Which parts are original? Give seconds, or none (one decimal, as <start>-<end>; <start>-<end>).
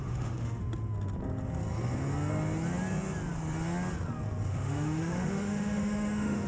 0.6-4.5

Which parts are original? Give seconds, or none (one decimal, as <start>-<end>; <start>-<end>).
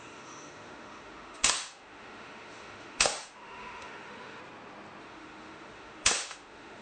4.4-5.0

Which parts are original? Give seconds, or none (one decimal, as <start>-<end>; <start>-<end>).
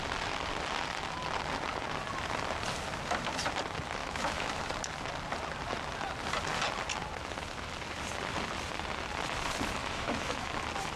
0.0-4.0; 4.6-9.8; 10.5-11.0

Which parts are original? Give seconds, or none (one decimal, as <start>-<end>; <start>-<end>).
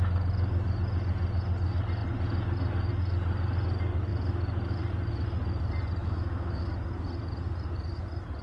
0.0-6.0; 6.7-8.4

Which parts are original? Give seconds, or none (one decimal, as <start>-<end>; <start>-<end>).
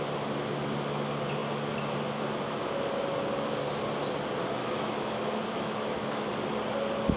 0.0-4.6; 6.3-7.2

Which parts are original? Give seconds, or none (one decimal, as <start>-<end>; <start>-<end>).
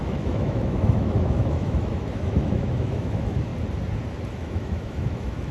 3.5-4.3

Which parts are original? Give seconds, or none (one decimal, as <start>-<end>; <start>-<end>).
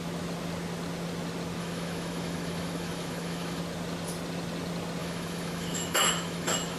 0.0-1.6; 3.6-5.0